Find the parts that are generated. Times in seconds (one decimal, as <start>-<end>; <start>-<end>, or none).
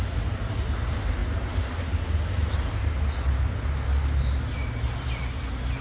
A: none